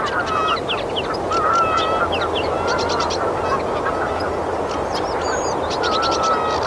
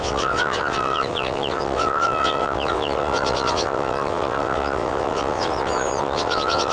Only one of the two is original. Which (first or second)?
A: first